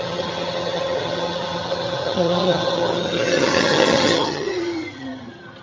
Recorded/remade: remade